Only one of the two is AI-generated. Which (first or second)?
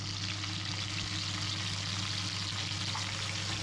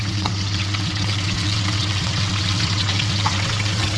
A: second